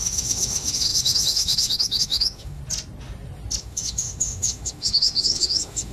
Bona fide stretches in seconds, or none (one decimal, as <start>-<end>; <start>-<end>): 2.6-3.6